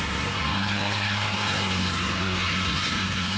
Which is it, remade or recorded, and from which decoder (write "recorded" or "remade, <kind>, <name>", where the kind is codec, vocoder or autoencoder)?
remade, codec, SNAC